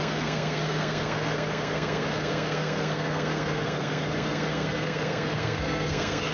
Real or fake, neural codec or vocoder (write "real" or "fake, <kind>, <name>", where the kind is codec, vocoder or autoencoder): fake, codec, SNAC